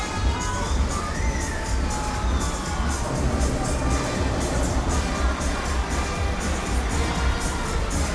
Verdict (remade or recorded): recorded